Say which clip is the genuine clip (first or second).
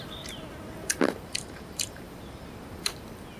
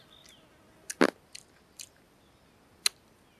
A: second